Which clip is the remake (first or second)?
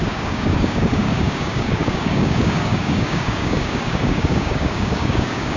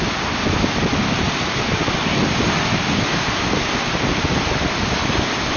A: first